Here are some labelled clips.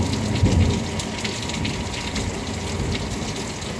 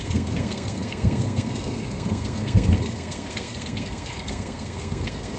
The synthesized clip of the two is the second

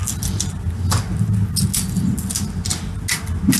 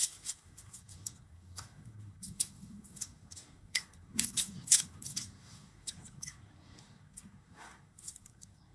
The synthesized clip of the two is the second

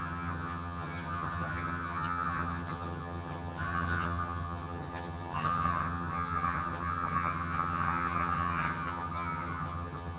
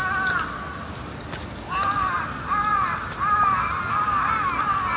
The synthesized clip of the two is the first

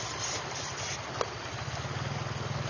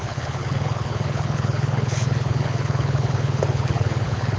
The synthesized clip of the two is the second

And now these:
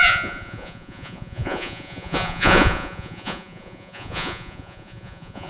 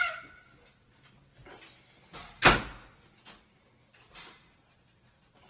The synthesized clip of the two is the first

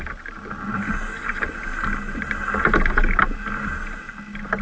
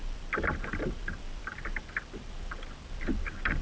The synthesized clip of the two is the second